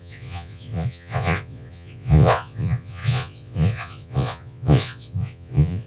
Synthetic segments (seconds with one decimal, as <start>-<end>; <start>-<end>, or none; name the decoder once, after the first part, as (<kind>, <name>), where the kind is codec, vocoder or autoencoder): 0.0-5.9 (vocoder, Vocos)